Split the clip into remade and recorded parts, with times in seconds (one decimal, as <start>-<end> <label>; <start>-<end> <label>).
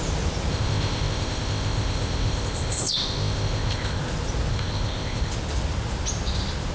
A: 0.0-0.5 recorded; 0.5-4.0 remade; 4.0-4.5 recorded; 4.5-5.3 remade; 5.3-6.7 recorded